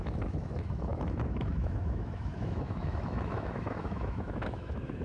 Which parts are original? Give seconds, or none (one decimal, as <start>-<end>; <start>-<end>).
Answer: none